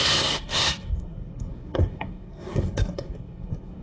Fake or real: fake